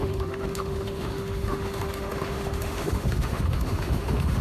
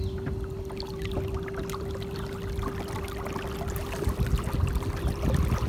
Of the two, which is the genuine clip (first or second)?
second